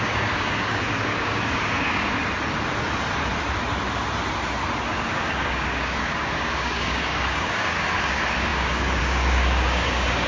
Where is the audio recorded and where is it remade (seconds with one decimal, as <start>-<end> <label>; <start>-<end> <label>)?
0.0-2.2 remade; 2.2-4.9 recorded; 4.9-10.3 remade